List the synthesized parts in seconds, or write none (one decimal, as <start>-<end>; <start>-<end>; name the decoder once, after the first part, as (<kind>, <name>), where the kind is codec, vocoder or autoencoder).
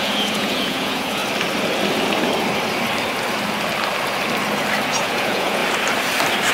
0.0-1.2 (vocoder, Vocos); 4.9-5.6